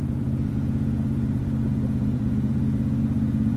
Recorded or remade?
remade